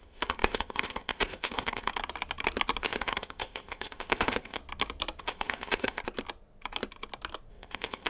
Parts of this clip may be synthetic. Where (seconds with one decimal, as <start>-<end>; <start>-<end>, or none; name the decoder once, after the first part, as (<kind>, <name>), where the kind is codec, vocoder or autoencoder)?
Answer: 0.0-1.9 (codec, ZipCodec); 2.8-4.6; 5.2-6.0; 7.5-8.1